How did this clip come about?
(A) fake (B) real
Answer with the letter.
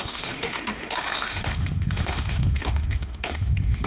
A